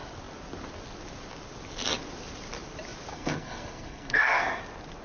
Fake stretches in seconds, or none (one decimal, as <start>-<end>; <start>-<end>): 3.1-4.6